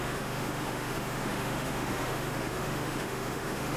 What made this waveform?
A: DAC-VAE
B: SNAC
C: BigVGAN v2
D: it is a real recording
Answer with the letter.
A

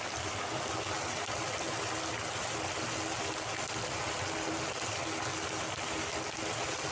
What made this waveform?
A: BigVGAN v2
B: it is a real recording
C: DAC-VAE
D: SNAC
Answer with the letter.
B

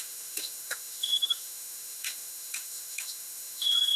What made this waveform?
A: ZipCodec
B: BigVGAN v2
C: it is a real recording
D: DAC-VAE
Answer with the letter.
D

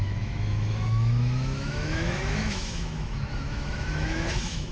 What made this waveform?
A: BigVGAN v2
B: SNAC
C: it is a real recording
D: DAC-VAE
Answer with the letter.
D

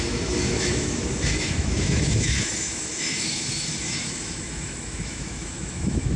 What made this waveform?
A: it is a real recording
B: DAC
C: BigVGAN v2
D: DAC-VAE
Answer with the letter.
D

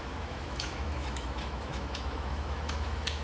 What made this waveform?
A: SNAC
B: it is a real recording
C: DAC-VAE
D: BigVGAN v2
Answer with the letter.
C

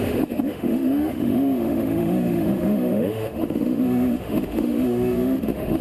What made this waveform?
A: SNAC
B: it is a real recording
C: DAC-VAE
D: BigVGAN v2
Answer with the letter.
C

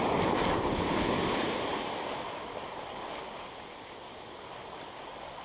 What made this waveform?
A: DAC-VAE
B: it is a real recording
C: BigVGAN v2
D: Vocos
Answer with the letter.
B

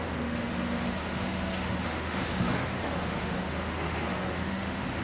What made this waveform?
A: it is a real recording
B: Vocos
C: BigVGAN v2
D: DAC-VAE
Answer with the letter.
D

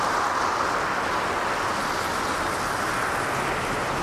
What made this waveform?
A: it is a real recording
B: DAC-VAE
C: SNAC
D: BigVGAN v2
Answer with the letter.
A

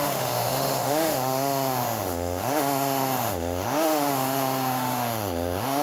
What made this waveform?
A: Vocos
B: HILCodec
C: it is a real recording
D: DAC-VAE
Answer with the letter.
D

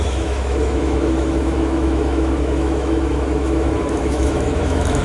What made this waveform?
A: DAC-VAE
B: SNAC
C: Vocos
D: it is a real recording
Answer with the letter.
A